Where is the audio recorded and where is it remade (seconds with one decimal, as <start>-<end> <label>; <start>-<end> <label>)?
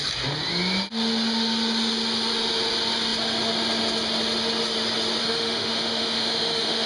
0.0-5.2 recorded; 5.2-6.9 remade